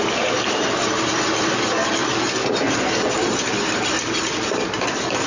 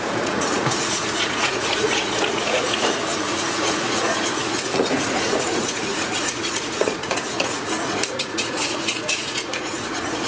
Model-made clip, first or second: second